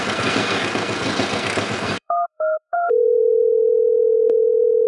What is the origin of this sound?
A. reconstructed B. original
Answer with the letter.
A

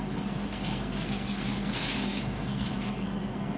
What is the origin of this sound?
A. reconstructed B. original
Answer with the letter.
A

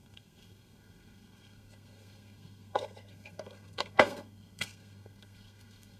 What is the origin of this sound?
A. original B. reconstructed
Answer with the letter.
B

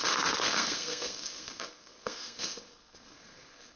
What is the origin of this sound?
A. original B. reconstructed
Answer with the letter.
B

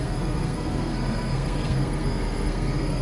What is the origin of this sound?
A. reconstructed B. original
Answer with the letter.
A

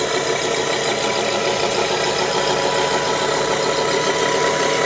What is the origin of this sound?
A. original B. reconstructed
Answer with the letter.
A